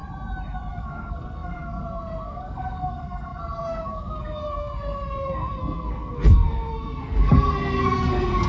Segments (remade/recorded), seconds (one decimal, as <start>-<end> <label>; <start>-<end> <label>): 0.0-0.7 recorded; 0.7-8.5 remade